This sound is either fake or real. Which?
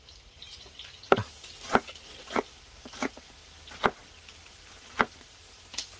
real